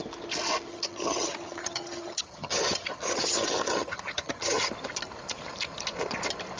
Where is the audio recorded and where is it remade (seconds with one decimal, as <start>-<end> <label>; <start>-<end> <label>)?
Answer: 0.0-0.7 recorded; 0.7-4.7 remade; 4.7-6.6 recorded